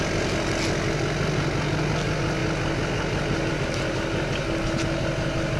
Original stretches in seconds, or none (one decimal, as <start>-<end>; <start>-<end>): 0.0-5.6